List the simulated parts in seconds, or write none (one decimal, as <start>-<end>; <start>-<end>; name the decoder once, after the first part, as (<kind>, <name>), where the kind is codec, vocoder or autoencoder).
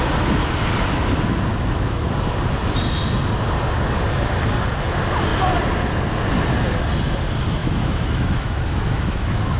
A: 1.5-2.1 (autoencoder, DAC-VAE); 7.6-9.6